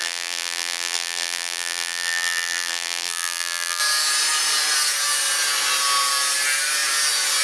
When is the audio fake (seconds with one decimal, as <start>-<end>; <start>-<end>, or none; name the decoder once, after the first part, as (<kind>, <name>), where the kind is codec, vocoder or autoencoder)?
0.0-3.8 (vocoder, BigVGAN v2)